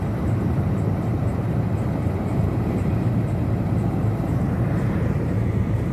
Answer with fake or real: fake